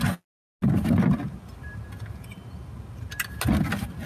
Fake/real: real